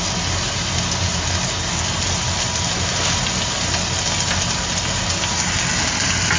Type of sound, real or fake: real